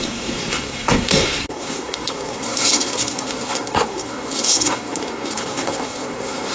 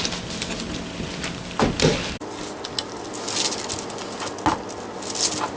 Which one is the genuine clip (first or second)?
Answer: second